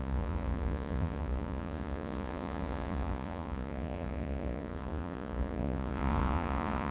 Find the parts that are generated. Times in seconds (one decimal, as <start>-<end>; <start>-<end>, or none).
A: 0.0-6.9